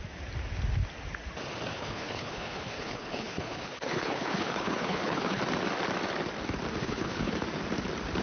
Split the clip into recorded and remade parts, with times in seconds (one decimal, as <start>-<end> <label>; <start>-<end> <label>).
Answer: 0.0-1.7 recorded; 1.7-5.4 remade; 5.4-6.8 recorded; 6.8-7.3 remade; 7.3-8.2 recorded